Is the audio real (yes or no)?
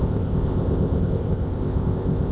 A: no